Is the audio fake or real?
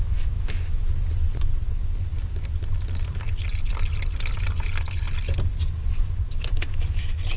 real